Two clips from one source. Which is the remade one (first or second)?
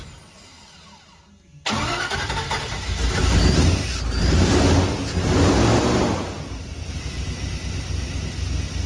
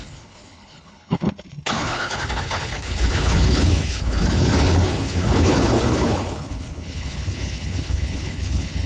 second